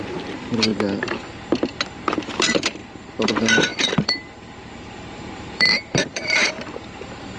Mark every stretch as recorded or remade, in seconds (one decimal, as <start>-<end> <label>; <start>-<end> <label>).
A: 0.0-0.7 remade; 0.7-2.1 recorded; 2.1-2.8 remade; 2.8-3.3 recorded; 3.3-7.4 remade